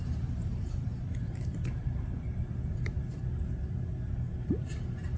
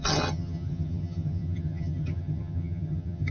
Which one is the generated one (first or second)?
second